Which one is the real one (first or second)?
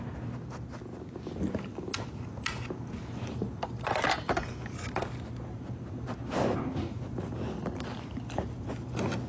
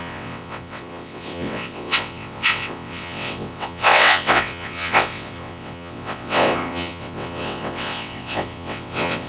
first